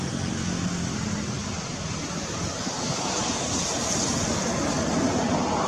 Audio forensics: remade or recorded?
recorded